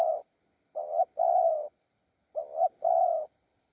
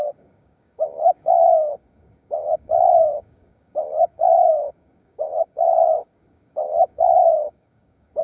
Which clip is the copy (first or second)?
second